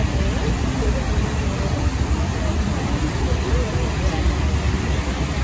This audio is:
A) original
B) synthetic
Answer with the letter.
A